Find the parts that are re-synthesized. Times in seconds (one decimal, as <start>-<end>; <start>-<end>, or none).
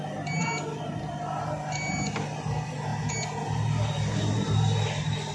none